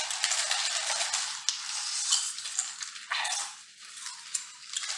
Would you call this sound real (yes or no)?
yes